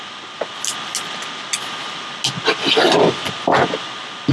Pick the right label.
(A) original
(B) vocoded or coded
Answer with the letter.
A